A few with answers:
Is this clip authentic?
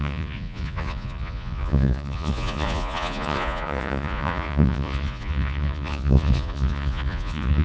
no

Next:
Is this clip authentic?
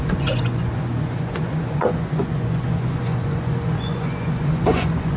no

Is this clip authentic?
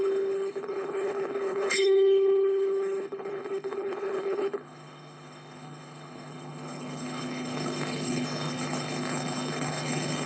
no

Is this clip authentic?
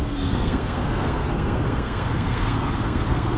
no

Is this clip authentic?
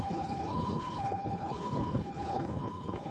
no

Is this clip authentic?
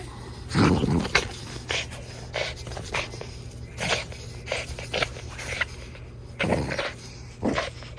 yes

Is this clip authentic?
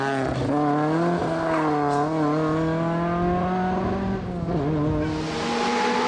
yes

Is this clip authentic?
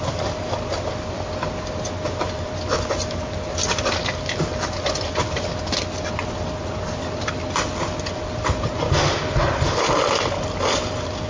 yes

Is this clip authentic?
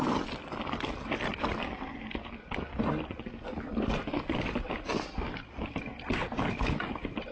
yes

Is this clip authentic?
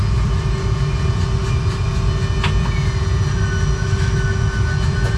yes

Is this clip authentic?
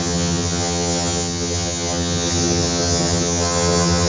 no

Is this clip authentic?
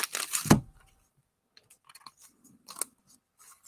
yes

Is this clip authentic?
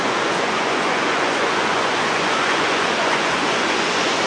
no